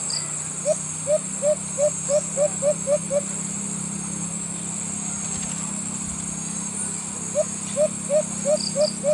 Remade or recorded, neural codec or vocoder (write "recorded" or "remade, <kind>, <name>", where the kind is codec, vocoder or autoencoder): recorded